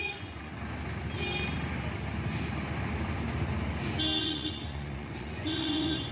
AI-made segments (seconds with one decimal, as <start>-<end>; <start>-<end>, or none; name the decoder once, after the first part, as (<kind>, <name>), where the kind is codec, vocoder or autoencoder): 0.0-0.5 (vocoder, Vocos); 4.2-6.1